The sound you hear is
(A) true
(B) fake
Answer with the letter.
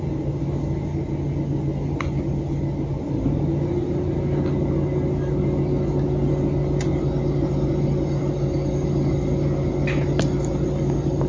A